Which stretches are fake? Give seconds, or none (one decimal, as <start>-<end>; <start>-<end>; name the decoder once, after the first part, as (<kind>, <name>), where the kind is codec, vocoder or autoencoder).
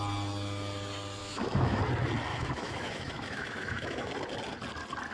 1.2-1.8 (autoencoder, DAC-VAE); 2.3-4.1